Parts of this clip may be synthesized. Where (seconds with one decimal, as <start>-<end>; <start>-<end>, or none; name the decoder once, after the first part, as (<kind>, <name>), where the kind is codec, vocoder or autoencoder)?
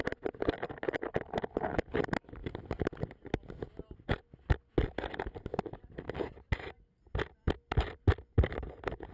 none